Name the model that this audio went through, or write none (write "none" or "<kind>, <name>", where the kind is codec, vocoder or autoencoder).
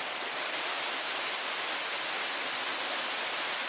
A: none